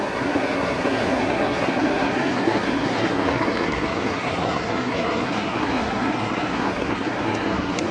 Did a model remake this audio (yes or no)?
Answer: yes